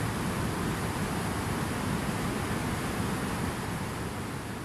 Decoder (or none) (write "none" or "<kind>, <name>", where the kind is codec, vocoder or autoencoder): none